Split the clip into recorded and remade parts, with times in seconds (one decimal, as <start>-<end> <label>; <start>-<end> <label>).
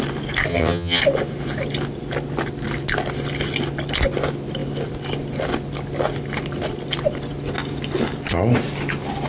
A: 0.0-0.5 recorded; 0.5-1.0 remade; 1.0-9.3 recorded